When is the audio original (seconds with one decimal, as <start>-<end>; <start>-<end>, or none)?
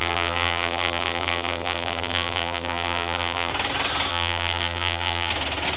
3.5-4.1; 5.3-5.8